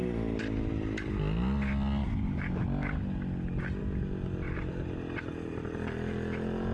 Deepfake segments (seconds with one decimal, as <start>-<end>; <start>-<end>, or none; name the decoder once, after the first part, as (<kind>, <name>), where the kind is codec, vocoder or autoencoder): none